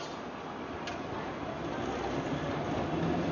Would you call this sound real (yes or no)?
yes